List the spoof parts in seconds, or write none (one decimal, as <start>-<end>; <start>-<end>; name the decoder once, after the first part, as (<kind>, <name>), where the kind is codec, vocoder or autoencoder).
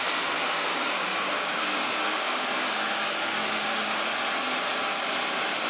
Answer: 0.7-4.1 (codec, DAC)